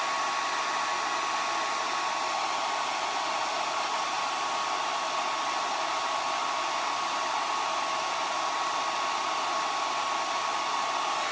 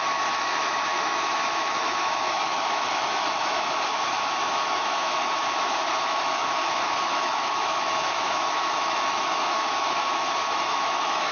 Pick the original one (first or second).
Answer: first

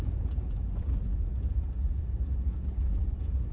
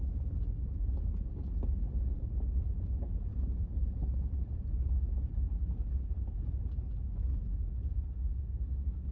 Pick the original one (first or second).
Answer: second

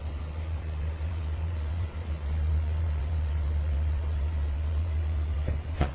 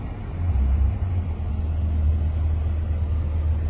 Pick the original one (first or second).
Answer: second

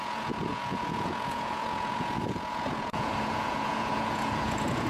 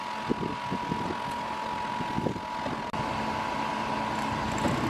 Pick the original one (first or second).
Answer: second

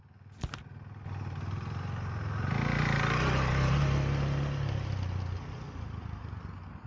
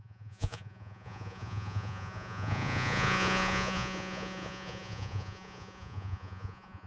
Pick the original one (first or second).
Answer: first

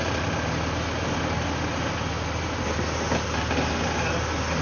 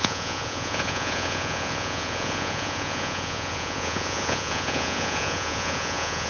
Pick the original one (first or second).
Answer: first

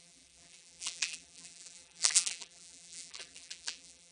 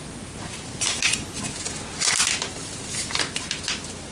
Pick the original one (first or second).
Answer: second